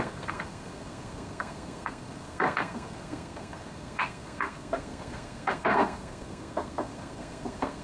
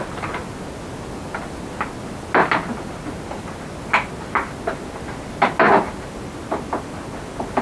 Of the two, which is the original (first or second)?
second